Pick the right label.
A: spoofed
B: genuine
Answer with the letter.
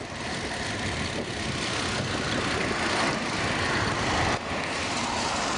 B